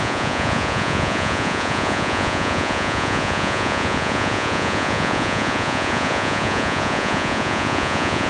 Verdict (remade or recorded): remade